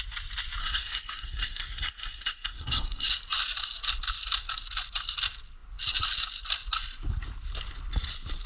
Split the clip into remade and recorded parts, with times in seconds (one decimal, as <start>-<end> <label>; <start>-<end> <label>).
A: 0.0-0.6 recorded; 0.6-3.1 remade; 3.1-8.5 recorded